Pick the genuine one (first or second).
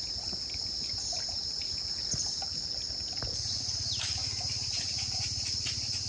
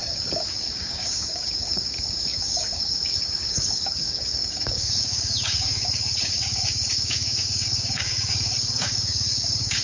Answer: first